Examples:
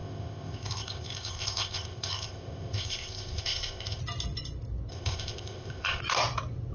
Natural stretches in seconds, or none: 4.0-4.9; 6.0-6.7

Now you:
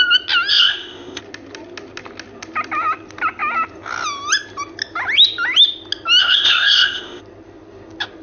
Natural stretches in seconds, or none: 0.0-0.5; 1.2-6.2; 7.2-8.2

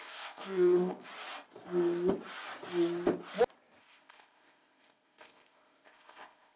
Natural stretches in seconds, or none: 1.1-3.8